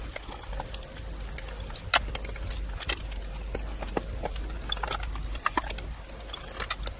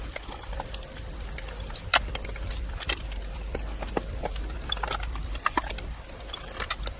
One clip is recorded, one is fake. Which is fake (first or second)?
second